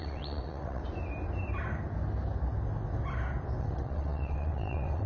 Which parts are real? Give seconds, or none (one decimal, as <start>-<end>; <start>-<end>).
0.8-3.6